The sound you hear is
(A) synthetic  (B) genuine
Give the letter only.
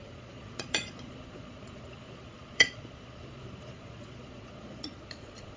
A